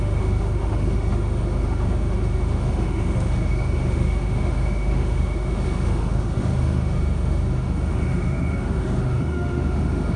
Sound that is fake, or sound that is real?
fake